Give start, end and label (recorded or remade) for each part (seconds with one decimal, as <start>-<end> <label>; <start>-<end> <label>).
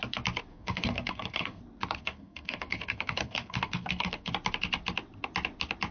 0.0-0.5 recorded; 0.5-1.6 remade; 1.6-2.0 recorded; 2.0-4.3 remade; 4.3-5.9 recorded